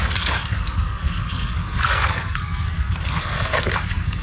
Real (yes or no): no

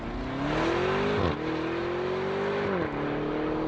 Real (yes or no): yes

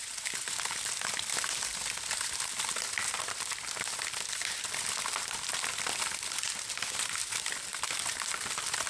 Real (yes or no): yes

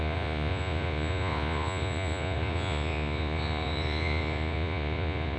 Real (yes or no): no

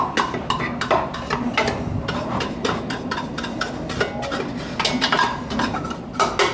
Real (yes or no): yes